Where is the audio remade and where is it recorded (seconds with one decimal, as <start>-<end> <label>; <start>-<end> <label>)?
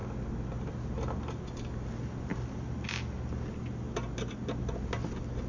0.0-5.5 recorded